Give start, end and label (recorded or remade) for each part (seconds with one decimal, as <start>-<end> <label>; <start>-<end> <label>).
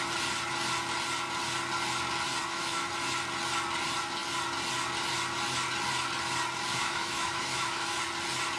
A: 0.0-2.4 recorded; 2.4-2.9 remade; 2.9-6.7 recorded; 6.7-8.0 remade; 8.0-8.6 recorded